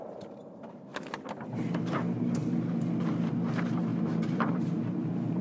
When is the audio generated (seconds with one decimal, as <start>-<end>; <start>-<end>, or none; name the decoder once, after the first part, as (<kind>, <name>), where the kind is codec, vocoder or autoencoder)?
0.0-0.9 (vocoder, BigVGAN v2); 1.8-2.4; 3.0-5.4